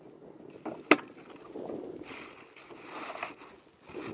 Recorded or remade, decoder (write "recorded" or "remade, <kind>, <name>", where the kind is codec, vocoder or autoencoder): recorded